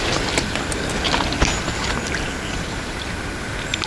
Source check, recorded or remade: recorded